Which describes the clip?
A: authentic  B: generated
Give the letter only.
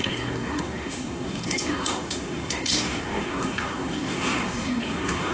B